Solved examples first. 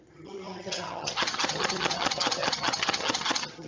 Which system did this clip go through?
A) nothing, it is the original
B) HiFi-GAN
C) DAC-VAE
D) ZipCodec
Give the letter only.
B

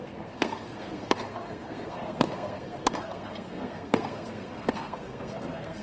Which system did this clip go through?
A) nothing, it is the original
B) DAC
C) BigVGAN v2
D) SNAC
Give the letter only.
D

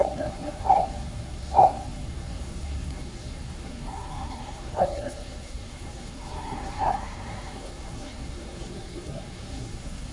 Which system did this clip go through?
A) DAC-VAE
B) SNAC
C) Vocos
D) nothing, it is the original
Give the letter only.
B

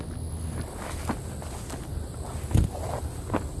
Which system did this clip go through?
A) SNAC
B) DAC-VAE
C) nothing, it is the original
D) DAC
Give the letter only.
C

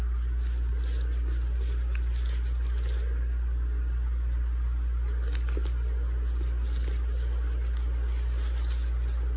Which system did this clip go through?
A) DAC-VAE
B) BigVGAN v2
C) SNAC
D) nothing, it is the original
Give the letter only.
D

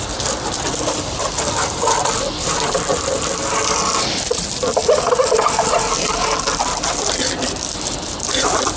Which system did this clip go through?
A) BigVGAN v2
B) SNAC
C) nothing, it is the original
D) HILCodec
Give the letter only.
A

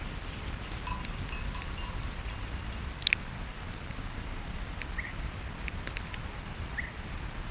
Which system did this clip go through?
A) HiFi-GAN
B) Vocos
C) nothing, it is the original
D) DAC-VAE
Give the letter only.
C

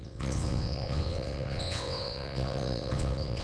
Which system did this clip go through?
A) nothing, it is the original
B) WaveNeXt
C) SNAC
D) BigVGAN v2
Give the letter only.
B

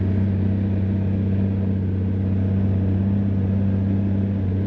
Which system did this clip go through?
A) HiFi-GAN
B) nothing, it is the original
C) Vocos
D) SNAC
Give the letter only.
B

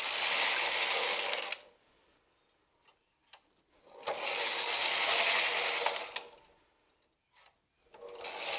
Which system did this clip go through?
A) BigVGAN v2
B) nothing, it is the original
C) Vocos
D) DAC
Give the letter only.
B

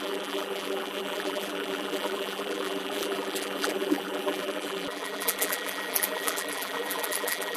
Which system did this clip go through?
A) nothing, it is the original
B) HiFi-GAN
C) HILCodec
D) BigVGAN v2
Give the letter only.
D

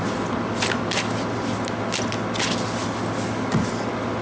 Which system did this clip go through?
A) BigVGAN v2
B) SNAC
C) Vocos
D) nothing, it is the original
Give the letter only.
D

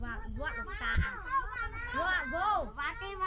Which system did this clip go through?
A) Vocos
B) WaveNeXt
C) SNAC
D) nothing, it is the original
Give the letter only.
D